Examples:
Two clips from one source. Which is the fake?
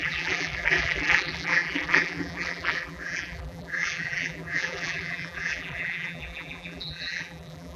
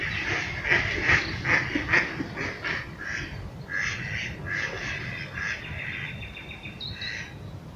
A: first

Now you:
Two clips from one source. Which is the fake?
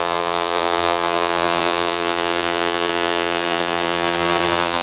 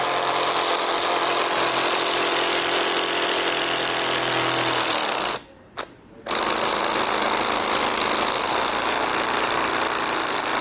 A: first